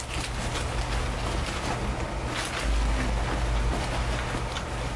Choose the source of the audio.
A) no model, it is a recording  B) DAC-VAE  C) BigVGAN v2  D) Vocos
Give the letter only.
A